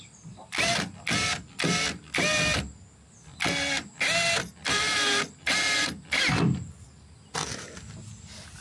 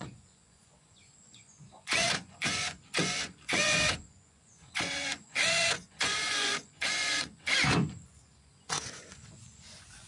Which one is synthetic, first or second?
second